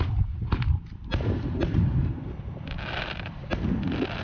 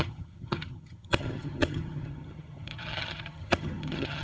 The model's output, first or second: second